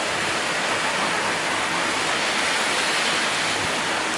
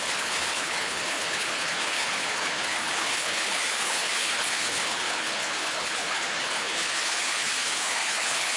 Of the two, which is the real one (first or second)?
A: first